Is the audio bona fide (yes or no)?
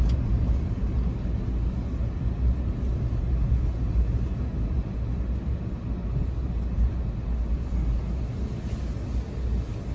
yes